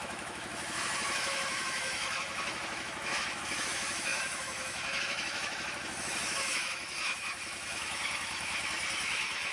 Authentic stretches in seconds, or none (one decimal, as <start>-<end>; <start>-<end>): none